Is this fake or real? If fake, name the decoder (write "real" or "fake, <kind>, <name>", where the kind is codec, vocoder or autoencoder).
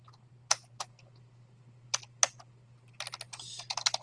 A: real